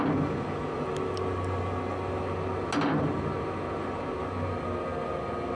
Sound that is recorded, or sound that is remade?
recorded